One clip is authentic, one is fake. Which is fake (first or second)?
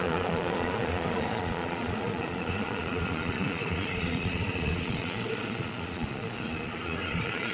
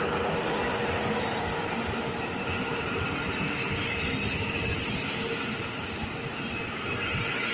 first